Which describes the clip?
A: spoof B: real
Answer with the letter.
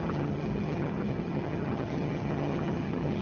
A